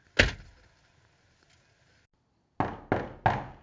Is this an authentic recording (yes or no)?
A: yes